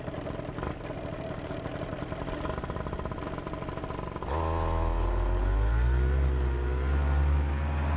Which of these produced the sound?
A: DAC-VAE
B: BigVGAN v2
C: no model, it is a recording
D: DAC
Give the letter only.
C